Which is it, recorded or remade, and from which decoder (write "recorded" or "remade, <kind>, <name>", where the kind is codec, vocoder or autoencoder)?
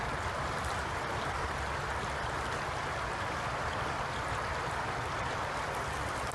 recorded